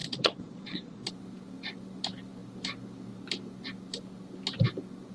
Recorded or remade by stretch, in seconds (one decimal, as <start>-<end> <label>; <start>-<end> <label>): 0.0-1.1 remade; 1.1-5.1 recorded